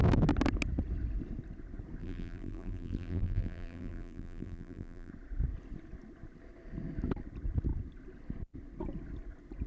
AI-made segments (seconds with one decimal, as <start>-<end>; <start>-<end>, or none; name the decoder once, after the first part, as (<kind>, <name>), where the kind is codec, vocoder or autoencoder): 2.0-5.1 (vocoder, BigVGAN v2)